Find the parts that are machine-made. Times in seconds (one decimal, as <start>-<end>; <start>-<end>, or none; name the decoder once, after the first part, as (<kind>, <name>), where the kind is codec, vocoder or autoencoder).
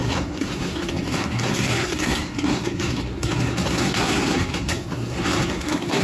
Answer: 0.0-6.0 (codec, SNAC)